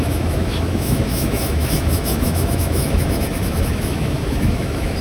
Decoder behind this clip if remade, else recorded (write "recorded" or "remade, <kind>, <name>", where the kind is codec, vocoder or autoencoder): remade, autoencoder, DAC-VAE